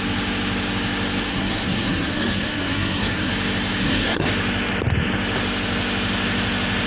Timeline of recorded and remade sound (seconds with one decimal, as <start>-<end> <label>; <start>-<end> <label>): 0.0-1.3 recorded; 1.3-3.3 remade; 3.3-3.8 recorded; 3.8-4.3 remade; 4.3-6.9 recorded

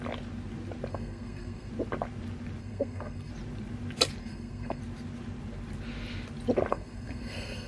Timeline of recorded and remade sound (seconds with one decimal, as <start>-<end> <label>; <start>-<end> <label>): 0.0-0.9 recorded; 0.9-1.7 remade; 1.7-2.6 recorded; 2.6-3.3 remade; 3.3-4.2 recorded; 4.2-4.8 remade; 4.8-6.7 recorded; 6.7-7.7 remade

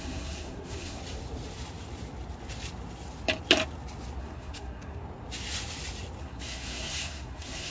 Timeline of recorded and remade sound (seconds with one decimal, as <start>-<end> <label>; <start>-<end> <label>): 0.0-1.0 remade; 1.0-4.2 recorded; 4.2-5.0 remade; 5.0-6.2 recorded; 6.2-7.7 remade

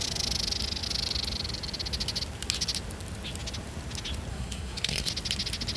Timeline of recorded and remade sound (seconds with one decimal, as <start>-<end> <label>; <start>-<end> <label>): 0.0-4.3 recorded; 4.3-5.1 remade; 5.1-5.8 recorded